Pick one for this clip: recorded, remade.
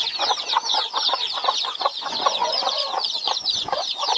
remade